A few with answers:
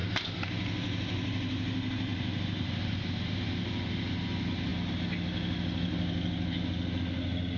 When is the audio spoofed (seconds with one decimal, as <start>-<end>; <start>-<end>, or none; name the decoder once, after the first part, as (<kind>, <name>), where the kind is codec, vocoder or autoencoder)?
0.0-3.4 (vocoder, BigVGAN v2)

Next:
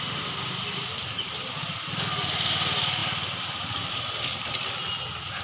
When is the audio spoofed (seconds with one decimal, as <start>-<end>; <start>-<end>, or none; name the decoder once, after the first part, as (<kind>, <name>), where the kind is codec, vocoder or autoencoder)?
none

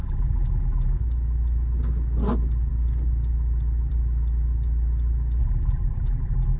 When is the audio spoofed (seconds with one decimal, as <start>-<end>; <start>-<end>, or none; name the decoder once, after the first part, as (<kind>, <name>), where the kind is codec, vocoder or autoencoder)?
0.0-1.0 (vocoder, BigVGAN v2); 5.4-6.6

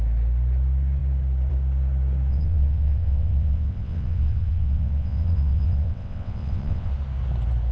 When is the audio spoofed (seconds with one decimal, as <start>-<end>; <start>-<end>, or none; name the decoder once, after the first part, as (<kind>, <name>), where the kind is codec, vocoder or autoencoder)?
2.3-6.9 (vocoder, WaveNeXt)

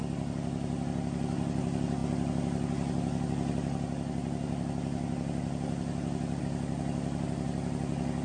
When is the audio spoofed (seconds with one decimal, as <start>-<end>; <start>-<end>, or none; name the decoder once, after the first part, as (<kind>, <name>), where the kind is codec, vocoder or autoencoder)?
none

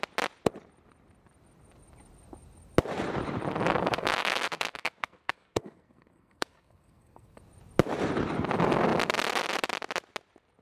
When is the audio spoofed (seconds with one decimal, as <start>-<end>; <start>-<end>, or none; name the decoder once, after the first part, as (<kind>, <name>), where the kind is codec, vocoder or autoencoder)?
3.7-7.4 (codec, SNAC)

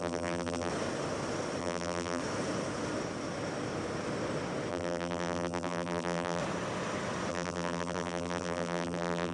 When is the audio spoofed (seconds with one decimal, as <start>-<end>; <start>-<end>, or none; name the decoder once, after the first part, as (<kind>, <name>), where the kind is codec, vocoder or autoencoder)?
0.0-0.7 (vocoder, BigVGAN v2); 1.6-2.2; 4.7-6.4; 7.3-9.3

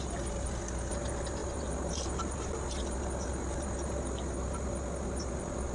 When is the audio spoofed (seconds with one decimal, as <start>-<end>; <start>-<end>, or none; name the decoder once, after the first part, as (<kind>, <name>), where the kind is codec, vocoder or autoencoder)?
none